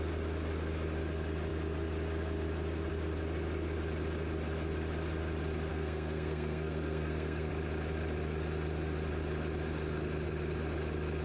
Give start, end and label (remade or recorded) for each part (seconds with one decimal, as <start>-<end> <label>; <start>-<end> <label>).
0.0-5.7 recorded; 5.7-7.5 remade; 7.5-11.2 recorded